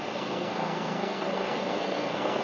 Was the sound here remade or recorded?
remade